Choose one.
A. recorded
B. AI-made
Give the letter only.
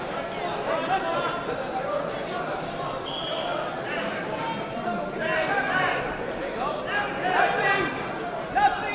A